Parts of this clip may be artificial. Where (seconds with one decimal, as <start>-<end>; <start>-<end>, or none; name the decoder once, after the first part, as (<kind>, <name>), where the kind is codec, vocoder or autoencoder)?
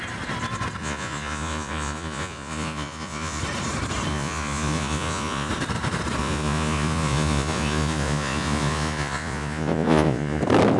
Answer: 0.8-3.4 (vocoder, Vocos); 4.1-5.5; 6.2-10.4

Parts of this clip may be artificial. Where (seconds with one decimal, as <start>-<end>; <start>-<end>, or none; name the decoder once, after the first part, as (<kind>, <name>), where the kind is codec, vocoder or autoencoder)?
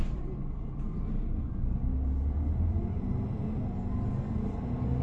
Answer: none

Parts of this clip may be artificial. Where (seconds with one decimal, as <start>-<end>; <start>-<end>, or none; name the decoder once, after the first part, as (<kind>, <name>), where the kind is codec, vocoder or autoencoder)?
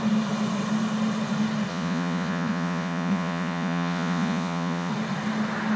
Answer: 1.7-4.9 (vocoder, Vocos)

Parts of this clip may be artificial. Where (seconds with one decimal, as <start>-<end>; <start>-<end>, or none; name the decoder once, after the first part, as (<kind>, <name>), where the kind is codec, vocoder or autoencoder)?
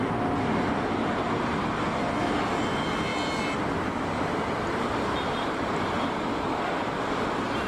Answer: none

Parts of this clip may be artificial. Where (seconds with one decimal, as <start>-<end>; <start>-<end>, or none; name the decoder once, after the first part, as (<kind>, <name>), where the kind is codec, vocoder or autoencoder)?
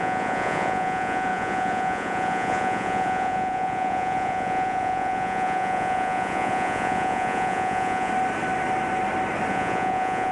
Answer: 0.0-8.1 (vocoder, Vocos); 9.5-10.3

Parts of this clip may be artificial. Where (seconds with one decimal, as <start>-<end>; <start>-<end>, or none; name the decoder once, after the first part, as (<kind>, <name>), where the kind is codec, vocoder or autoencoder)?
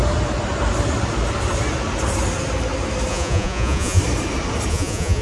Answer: 3.1-4.0 (vocoder, Vocos); 4.7-5.2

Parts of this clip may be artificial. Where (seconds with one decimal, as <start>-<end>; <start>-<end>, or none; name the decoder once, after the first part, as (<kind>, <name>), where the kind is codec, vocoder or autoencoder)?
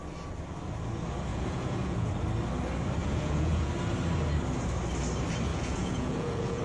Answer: 1.3-2.1 (vocoder, Vocos); 3.0-3.7; 5.5-6.6